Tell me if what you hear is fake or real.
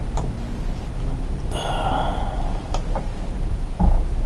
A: real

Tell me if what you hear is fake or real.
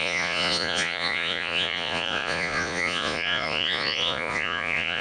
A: fake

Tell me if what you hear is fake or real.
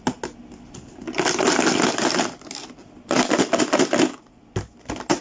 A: real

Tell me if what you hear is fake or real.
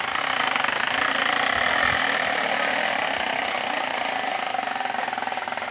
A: real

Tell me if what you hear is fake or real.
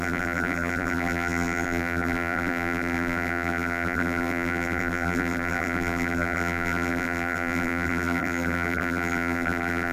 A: fake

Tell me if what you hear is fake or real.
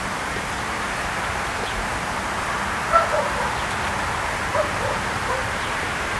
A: fake